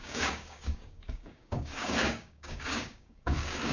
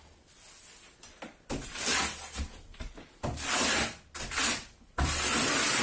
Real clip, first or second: second